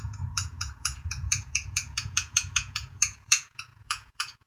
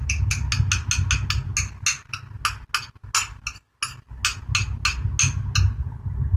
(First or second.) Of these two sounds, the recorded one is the second